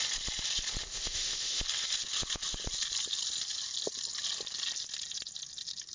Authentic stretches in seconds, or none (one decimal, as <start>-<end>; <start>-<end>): 0.0-0.8; 1.6-5.9